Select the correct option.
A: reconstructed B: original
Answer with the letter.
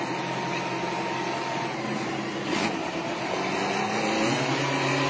B